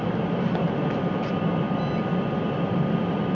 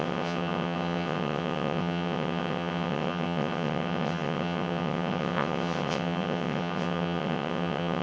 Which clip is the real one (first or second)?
first